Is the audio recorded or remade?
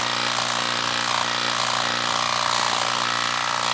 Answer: recorded